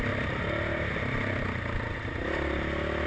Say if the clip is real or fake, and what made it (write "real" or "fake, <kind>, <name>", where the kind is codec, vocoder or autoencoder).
real